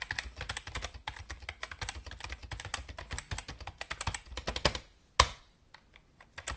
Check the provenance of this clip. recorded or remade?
recorded